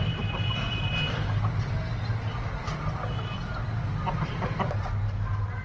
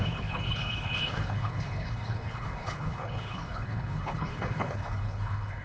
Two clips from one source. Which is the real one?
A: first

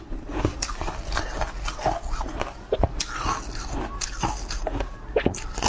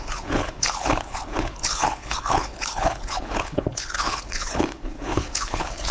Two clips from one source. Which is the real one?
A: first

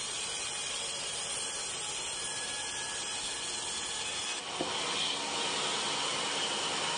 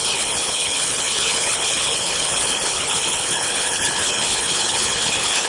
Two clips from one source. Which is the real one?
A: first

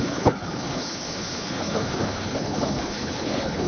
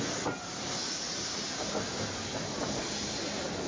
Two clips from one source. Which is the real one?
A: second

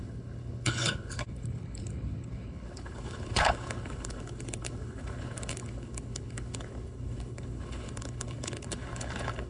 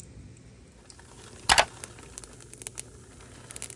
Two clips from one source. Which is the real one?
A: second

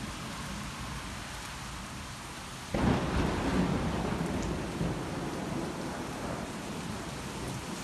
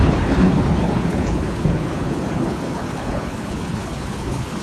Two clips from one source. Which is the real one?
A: first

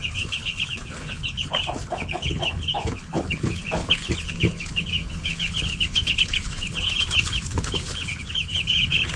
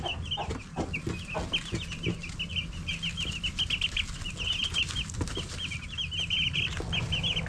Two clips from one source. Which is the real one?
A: second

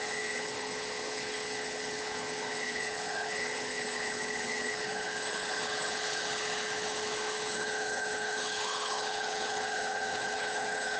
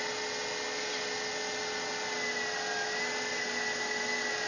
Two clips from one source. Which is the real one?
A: second